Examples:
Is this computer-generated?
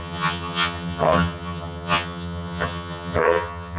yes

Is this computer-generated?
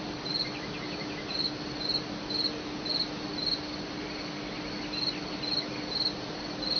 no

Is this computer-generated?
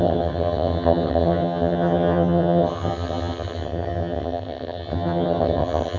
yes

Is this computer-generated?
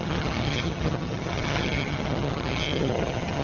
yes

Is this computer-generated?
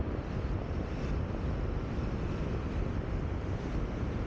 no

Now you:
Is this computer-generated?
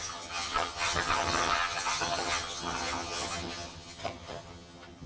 yes